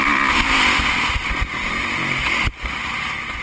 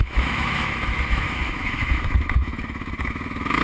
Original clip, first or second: first